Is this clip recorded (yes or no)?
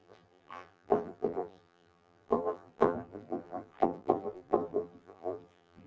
no